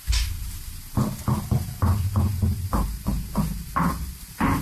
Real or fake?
real